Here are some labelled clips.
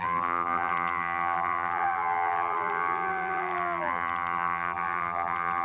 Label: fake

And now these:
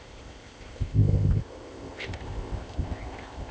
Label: fake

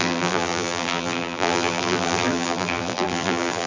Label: fake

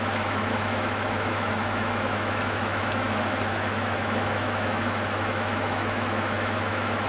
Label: fake